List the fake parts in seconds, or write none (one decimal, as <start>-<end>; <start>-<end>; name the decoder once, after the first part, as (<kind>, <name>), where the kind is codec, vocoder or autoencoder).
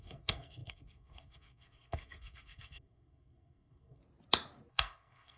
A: 0.0-4.0 (codec, SNAC); 4.7-5.4